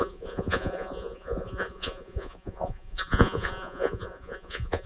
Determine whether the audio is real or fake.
fake